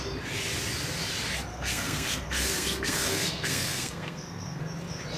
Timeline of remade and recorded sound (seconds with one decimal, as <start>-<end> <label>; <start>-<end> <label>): 0.0-1.5 recorded; 1.5-4.6 remade; 4.6-5.2 recorded